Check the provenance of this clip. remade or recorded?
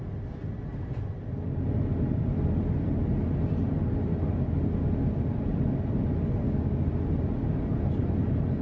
recorded